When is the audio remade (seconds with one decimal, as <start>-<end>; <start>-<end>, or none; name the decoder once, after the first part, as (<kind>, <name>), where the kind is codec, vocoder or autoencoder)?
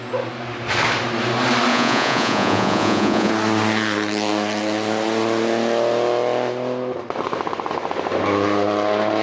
1.7-3.3 (vocoder, Vocos)